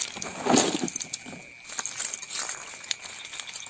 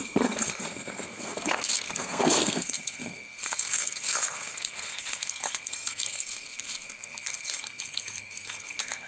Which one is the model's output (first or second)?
second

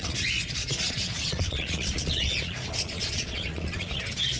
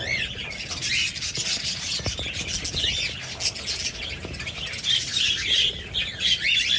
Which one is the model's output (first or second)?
first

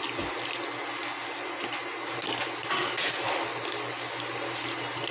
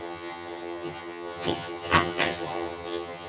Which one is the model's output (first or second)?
second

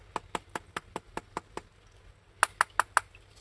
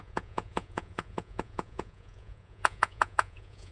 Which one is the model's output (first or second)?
second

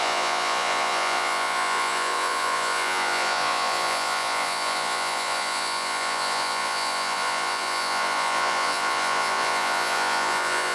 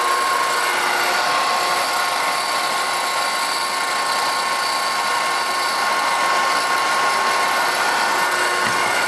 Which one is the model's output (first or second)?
first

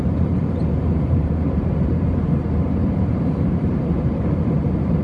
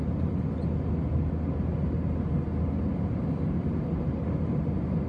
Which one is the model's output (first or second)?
first